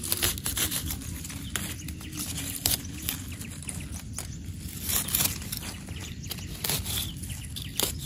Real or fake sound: real